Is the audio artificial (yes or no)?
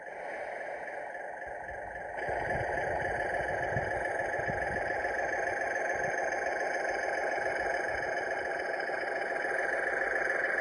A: no